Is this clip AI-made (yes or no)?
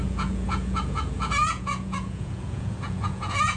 yes